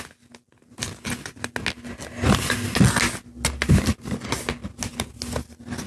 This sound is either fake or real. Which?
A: real